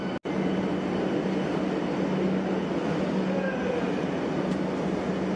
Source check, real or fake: real